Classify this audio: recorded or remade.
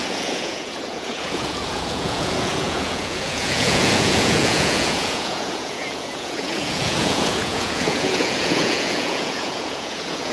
remade